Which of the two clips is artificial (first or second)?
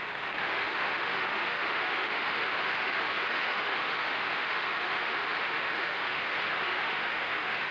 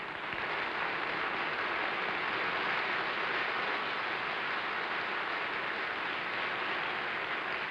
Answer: first